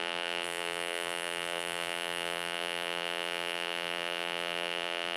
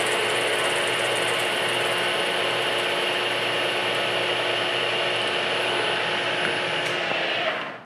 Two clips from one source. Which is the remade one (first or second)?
first